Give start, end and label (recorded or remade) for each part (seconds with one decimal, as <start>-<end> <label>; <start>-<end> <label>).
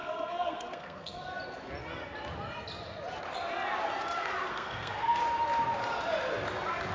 0.0-1.2 remade; 1.2-4.5 recorded; 4.5-5.2 remade; 5.2-6.9 recorded